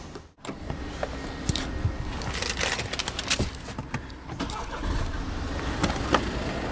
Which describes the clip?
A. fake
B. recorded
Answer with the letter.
B